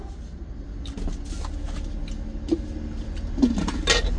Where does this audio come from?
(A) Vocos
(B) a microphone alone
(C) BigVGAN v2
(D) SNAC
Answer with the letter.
B